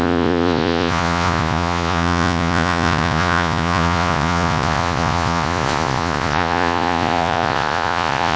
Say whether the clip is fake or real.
fake